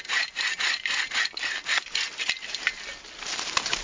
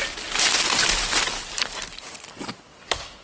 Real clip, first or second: first